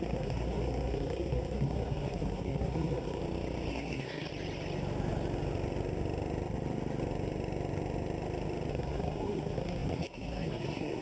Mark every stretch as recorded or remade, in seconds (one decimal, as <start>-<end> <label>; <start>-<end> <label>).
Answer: 0.0-3.2 remade; 3.2-3.7 recorded; 3.7-4.3 remade; 4.3-8.7 recorded; 8.7-11.0 remade